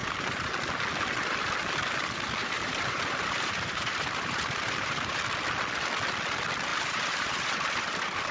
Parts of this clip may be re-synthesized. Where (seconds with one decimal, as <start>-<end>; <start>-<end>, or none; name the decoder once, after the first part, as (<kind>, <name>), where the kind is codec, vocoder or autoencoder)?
0.0-0.5 (vocoder, BigVGAN v2); 2.4-5.2; 6.7-8.3